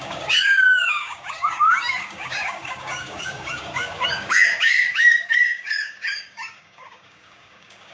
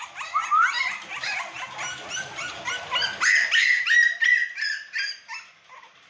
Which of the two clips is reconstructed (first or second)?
first